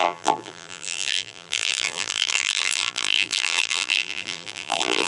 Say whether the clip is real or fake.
fake